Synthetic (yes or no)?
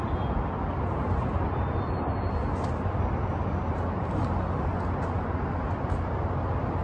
no